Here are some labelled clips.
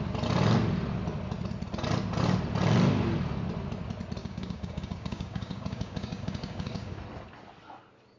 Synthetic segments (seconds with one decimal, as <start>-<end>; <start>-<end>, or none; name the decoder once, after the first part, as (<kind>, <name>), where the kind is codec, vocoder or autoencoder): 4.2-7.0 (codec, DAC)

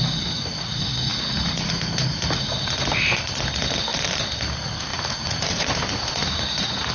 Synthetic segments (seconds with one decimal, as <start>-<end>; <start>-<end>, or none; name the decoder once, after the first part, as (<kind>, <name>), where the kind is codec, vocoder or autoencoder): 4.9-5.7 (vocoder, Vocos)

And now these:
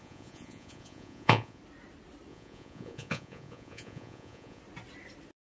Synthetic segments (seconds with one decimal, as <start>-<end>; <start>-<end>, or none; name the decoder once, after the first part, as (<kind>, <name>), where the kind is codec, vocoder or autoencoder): 0.0-1.6 (vocoder, Vocos); 2.3-4.6

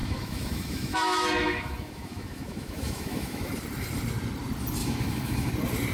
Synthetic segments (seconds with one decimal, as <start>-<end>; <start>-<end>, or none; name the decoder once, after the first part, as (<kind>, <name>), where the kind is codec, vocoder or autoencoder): 0.0-3.5 (autoencoder, DAC-VAE); 4.8-5.5